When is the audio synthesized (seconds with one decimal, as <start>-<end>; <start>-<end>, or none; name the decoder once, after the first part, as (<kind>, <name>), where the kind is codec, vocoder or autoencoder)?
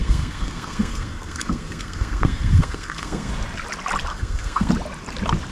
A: 0.0-3.3 (codec, SNAC); 4.1-4.7